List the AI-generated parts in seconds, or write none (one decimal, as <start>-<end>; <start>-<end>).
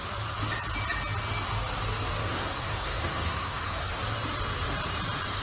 2.2-4.0